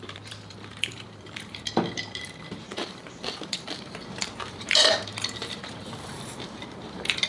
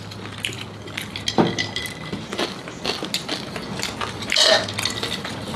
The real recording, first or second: second